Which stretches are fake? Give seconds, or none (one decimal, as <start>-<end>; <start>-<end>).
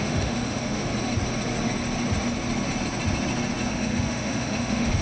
0.0-0.9; 3.7-5.0